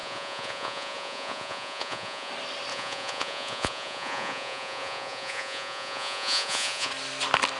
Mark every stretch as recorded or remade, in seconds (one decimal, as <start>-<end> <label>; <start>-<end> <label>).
0.0-2.3 remade; 2.3-2.7 recorded; 2.7-6.9 remade; 6.9-7.6 recorded